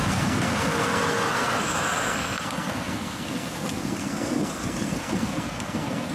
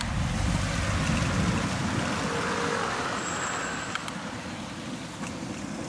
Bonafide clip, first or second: second